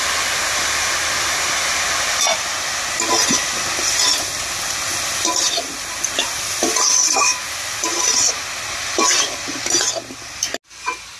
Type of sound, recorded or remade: recorded